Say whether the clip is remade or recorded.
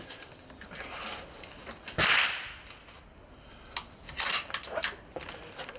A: recorded